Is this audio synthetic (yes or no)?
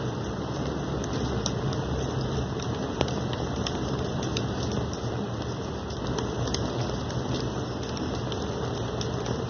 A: no